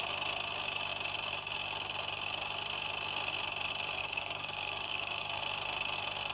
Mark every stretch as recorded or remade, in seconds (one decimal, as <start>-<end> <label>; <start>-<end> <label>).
0.0-4.0 recorded; 4.0-5.4 remade; 5.4-6.3 recorded